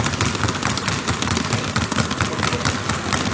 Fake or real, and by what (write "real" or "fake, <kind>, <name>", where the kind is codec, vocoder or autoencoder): real